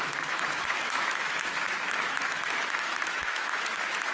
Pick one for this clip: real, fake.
fake